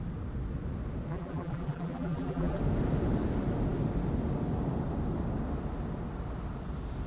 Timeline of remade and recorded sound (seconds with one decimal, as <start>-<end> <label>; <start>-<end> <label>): 0.0-1.1 recorded; 1.1-2.6 remade; 2.6-7.1 recorded